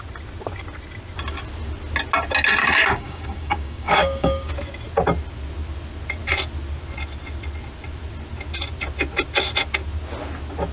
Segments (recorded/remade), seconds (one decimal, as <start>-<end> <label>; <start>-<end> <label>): 0.0-2.6 recorded; 2.6-4.5 remade; 4.5-10.7 recorded